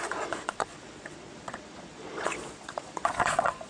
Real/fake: fake